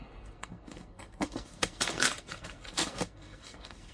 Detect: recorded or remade remade